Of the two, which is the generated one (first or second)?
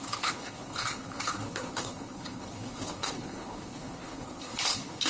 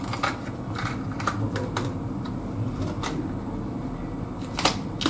first